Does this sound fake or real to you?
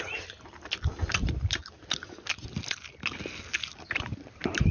real